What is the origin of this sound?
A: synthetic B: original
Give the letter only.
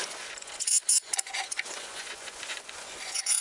A